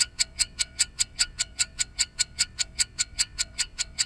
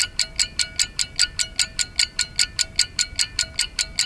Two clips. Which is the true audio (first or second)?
second